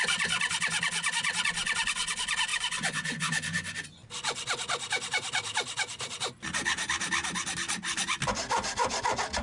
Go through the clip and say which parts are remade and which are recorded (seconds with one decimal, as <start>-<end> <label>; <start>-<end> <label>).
0.0-2.5 recorded; 2.5-3.9 remade; 3.9-9.4 recorded